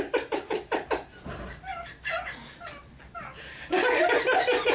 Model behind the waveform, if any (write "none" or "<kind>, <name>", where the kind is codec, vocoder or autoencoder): none